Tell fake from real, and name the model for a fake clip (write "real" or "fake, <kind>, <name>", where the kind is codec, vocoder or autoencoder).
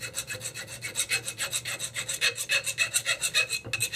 real